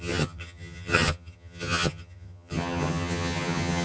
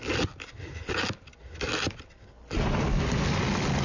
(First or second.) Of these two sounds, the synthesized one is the first